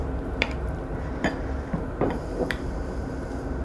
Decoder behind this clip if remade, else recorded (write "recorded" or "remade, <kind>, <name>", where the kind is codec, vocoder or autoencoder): remade, vocoder, BigVGAN v2